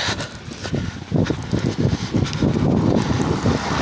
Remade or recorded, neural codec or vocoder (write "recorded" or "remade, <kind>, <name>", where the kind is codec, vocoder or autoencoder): recorded